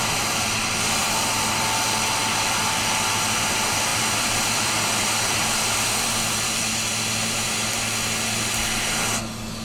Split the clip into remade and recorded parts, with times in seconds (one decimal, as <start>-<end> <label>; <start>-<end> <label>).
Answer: 0.0-1.0 recorded; 1.0-1.5 remade; 1.5-3.9 recorded; 3.9-6.6 remade; 6.6-9.6 recorded